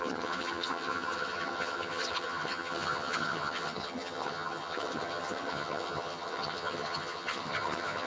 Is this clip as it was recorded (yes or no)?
no